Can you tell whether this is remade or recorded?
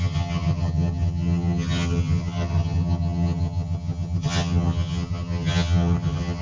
remade